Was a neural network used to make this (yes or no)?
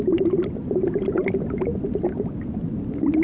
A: no